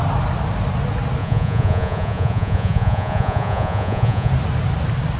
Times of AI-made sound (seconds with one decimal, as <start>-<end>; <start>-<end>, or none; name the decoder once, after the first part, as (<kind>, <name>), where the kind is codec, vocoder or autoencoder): 1.2-4.3 (vocoder, Vocos)